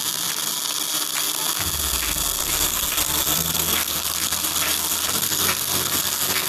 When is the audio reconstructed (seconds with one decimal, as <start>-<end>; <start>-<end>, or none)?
2.4-6.5